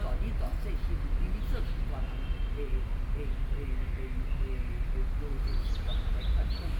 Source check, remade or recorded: recorded